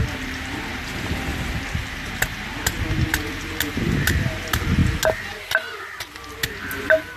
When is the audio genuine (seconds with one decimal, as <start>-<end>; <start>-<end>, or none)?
0.0-7.2